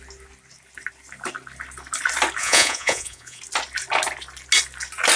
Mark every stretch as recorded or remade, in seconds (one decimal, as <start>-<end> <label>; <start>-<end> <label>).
0.0-2.4 recorded; 2.4-3.4 remade; 3.4-5.2 recorded